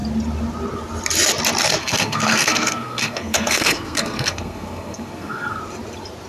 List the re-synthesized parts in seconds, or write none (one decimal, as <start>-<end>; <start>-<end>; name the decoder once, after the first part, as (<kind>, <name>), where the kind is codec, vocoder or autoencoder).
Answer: 1.8-5.6 (codec, SNAC)